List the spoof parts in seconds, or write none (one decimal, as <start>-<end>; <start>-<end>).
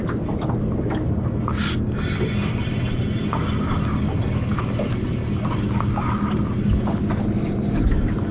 none